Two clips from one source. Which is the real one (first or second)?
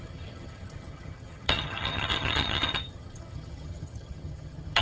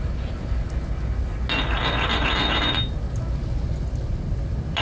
second